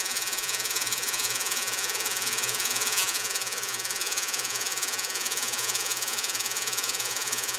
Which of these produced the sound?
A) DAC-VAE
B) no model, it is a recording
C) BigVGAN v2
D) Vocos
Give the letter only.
D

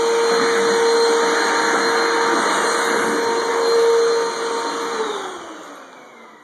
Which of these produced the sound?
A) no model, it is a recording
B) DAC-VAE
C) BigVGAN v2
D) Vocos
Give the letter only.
A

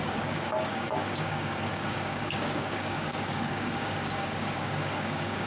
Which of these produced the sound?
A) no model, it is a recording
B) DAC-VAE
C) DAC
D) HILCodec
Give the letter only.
C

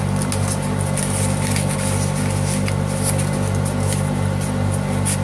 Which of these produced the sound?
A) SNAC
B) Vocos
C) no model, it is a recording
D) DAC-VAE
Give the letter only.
C